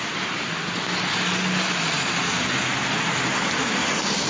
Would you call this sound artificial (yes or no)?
no